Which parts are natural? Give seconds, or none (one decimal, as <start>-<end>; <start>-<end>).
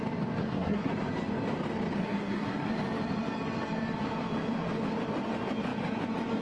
0.0-0.4; 0.9-2.0; 2.7-6.4